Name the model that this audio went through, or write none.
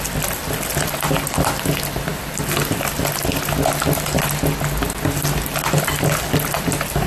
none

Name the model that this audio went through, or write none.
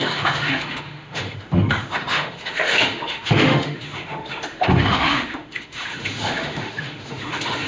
autoencoder, DAC-VAE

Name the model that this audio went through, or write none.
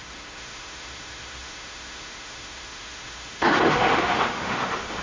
autoencoder, DAC-VAE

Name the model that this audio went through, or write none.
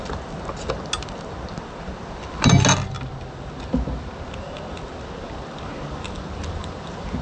none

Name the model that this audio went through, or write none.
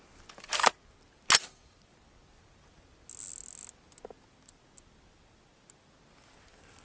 none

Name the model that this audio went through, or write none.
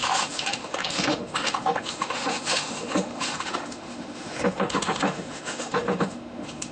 autoencoder, DAC-VAE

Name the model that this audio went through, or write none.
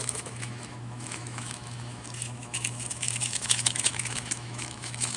autoencoder, DAC-VAE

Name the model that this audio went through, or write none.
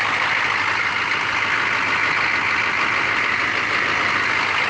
none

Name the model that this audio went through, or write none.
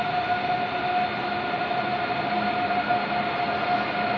none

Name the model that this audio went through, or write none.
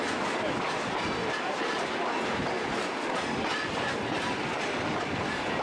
none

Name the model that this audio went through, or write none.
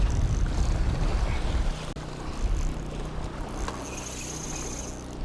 none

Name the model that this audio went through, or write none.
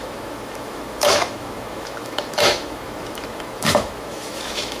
autoencoder, DAC-VAE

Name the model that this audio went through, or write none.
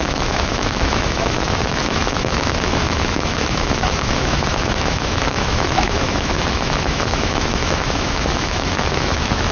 autoencoder, DAC-VAE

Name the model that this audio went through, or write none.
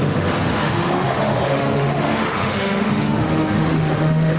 autoencoder, DAC-VAE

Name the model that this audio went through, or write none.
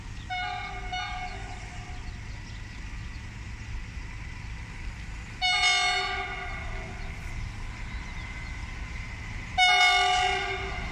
none